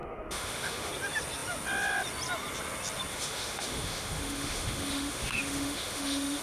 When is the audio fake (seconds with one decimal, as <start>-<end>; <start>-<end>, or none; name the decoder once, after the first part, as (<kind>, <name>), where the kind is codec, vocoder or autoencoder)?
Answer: 0.0-0.9 (autoencoder, DAC-VAE); 3.1-6.4